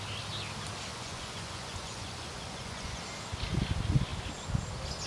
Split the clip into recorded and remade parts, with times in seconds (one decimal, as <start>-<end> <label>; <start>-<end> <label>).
0.0-0.9 recorded; 0.9-3.0 remade; 3.0-5.1 recorded

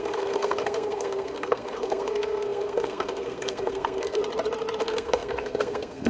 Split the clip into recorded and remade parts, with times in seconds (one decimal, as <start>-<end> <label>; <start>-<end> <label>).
0.0-4.2 remade; 4.2-4.8 recorded; 4.8-6.1 remade

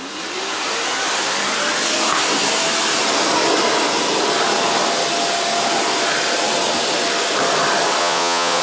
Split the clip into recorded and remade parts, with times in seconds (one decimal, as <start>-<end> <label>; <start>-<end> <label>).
0.0-8.0 recorded; 8.0-8.6 remade

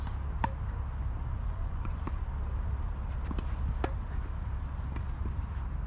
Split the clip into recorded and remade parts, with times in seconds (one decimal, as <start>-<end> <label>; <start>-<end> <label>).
0.0-1.4 recorded; 1.4-2.2 remade; 2.2-5.9 recorded

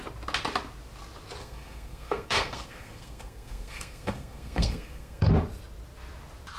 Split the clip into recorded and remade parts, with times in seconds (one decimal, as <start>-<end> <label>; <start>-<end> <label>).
0.0-1.4 recorded; 1.4-5.3 remade; 5.3-6.6 recorded

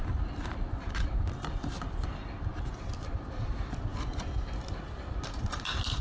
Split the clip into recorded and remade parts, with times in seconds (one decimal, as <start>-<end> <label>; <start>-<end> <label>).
0.0-6.0 recorded